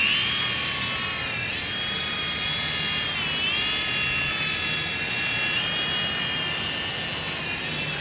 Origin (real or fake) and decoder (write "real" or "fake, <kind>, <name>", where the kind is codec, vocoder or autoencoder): real